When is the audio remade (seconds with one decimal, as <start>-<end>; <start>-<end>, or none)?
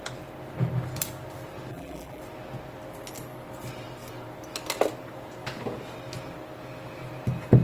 1.7-2.2